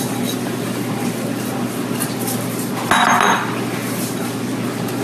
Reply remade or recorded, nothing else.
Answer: recorded